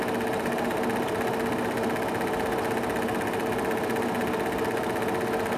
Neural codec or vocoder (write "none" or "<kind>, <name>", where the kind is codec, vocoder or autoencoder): none